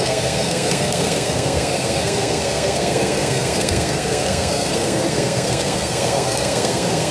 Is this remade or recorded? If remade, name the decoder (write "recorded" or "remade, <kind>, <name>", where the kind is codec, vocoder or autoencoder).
remade, codec, SNAC